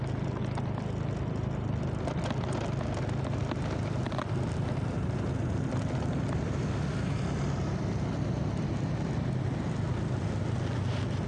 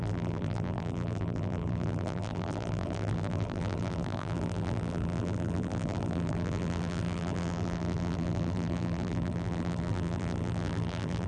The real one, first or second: first